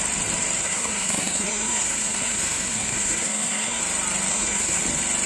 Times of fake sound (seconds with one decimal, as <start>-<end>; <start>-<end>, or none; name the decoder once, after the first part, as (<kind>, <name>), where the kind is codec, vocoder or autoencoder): 0.6-3.8 (codec, SNAC); 4.3-4.8